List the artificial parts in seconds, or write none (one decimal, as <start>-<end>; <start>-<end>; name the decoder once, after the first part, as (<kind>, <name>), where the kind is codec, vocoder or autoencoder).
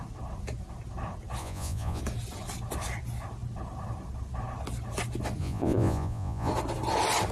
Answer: 1.4-2.0 (vocoder, Vocos); 5.4-6.5